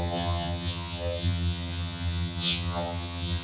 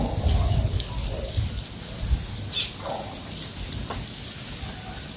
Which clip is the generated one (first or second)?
first